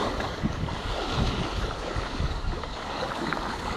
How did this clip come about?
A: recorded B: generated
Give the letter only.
B